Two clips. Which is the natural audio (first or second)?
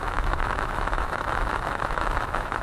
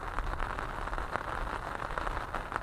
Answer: second